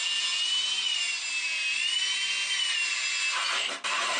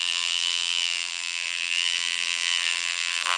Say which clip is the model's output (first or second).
second